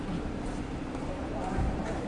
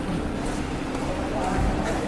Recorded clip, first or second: second